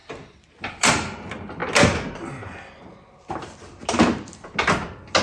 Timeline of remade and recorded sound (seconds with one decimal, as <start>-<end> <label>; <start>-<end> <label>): 0.0-0.9 remade; 0.9-5.2 recorded